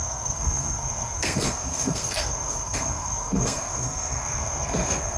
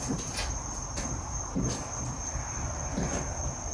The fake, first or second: first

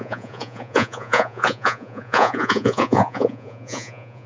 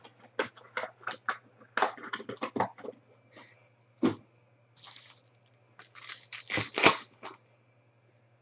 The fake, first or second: first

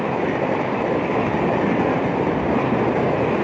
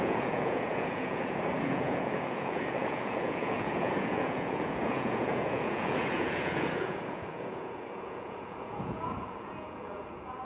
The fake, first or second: second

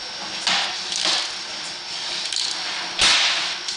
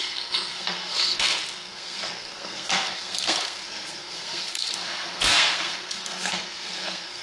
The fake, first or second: second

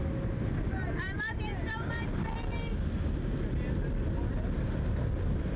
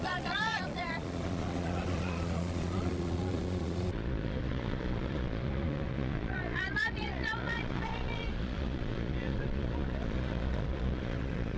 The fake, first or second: second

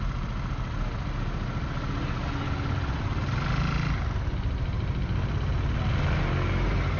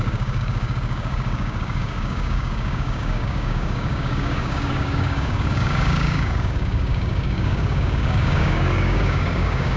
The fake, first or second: second